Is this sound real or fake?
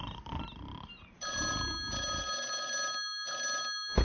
real